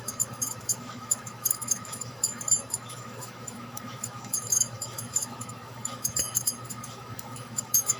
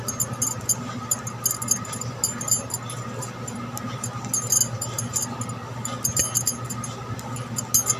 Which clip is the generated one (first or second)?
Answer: first